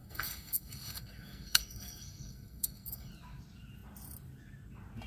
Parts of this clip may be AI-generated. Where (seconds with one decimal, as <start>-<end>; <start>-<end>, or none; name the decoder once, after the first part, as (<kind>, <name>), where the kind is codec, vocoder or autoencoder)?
0.0-3.1 (codec, SNAC)